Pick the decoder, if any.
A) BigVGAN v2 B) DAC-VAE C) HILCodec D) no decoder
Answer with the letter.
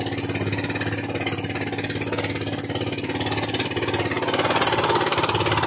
D